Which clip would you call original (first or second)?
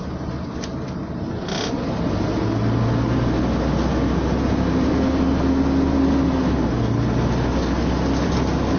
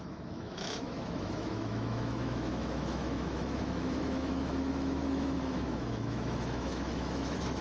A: first